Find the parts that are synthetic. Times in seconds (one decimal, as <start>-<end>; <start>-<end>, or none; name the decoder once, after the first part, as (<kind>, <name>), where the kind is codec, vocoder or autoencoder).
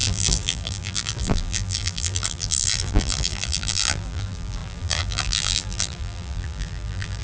0.0-7.2 (vocoder, BigVGAN v2)